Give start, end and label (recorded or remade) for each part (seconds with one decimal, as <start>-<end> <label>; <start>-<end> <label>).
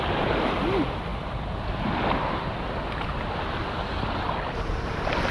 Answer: 0.0-5.3 recorded